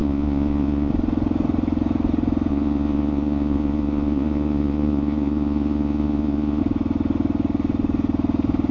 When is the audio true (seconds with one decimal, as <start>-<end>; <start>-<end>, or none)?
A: 0.9-2.5; 6.6-8.7